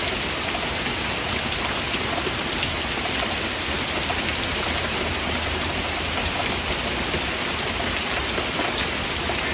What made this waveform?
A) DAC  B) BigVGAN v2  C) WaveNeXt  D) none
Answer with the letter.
D